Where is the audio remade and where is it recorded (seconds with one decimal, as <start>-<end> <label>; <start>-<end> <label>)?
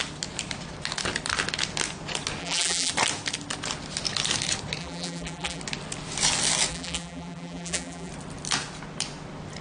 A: 0.0-2.4 recorded; 2.4-2.9 remade; 2.9-4.8 recorded; 4.8-5.6 remade; 5.6-6.7 recorded; 6.7-8.1 remade; 8.1-9.6 recorded